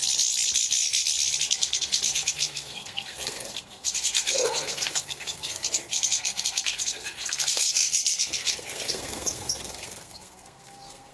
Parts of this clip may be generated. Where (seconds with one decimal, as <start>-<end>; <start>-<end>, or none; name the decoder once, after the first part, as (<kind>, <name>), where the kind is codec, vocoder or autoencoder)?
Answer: 1.5-11.1 (codec, SNAC)